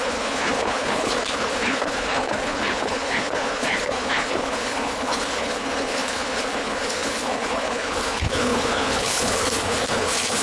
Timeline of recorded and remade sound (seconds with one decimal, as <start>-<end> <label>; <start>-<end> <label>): 0.0-10.4 remade